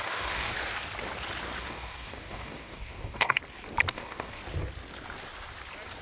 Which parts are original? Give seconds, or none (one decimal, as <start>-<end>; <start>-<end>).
0.5-1.6; 3.4-3.9; 4.4-6.0